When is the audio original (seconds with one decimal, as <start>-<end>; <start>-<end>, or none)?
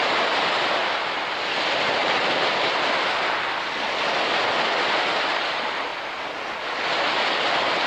0.0-7.9